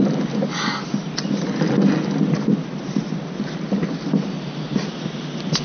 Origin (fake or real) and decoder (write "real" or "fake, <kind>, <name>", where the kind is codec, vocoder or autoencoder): real